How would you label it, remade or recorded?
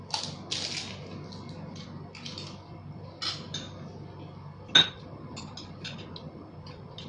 recorded